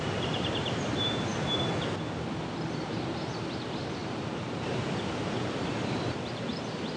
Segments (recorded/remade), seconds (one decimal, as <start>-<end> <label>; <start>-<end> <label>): 0.0-1.3 remade; 1.3-2.3 recorded; 2.3-7.0 remade